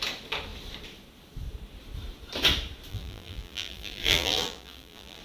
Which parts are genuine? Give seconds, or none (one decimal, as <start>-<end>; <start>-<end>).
0.0-2.9